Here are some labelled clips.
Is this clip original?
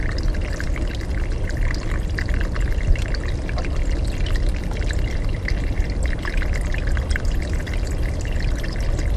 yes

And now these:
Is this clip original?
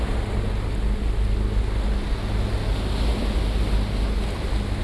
yes